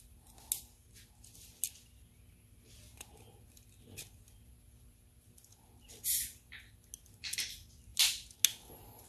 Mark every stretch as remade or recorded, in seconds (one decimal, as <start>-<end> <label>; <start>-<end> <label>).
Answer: 0.0-9.1 recorded